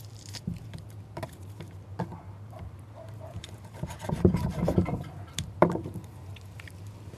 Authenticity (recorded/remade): remade